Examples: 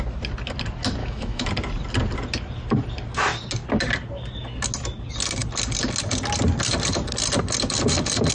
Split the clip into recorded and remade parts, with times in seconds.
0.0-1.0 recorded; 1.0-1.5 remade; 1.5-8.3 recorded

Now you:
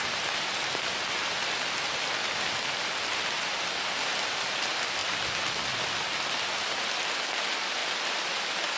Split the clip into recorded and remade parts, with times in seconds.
0.0-8.8 recorded

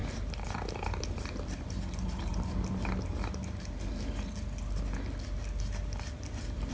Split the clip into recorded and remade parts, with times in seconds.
0.0-1.8 remade; 1.8-6.7 recorded

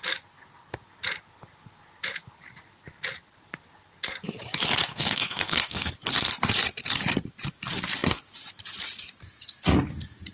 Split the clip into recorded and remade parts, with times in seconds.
0.0-4.9 recorded; 4.9-5.9 remade; 5.9-10.3 recorded

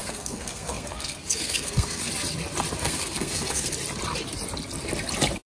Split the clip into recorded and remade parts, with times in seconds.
0.0-2.1 remade; 2.1-2.8 recorded; 2.8-3.7 remade; 3.7-5.5 recorded

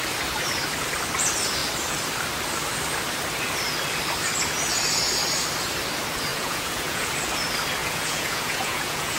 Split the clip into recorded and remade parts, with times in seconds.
0.0-6.3 recorded; 6.3-7.1 remade; 7.1-7.8 recorded; 7.8-9.2 remade

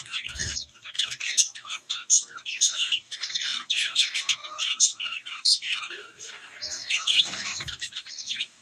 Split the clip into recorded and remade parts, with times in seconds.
0.0-8.6 remade

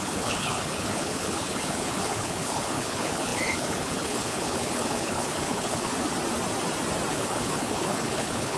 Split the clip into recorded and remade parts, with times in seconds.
0.0-5.9 remade; 5.9-7.1 recorded; 7.1-8.6 remade